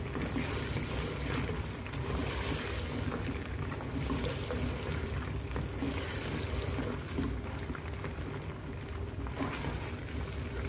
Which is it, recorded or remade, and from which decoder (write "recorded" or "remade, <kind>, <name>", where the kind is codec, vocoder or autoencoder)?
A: recorded